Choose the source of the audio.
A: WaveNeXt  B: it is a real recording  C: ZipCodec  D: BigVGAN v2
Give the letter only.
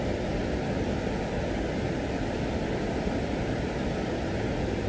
B